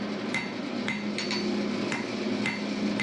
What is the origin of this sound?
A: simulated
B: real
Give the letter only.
B